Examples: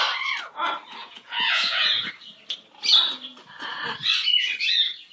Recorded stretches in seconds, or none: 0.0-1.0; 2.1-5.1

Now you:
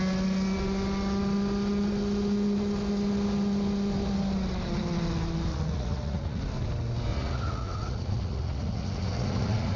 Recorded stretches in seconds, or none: 0.0-5.5; 6.4-7.1

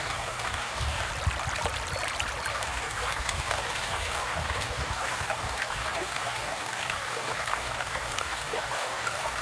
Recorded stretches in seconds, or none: 1.1-2.5

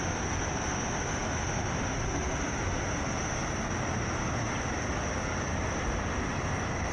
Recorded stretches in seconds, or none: 0.0-6.9

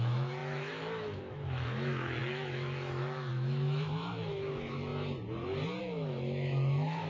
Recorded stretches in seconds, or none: 4.9-5.8

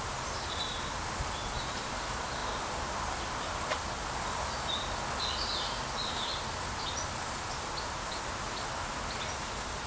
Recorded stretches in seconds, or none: 0.0-9.9

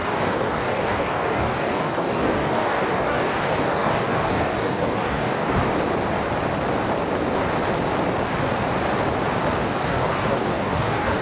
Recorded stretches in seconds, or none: 5.7-9.6

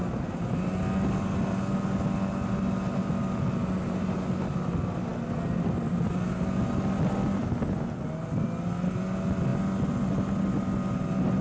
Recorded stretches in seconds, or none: 0.0-11.4